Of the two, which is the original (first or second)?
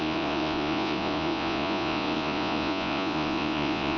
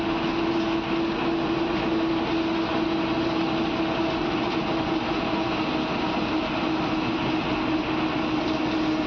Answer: second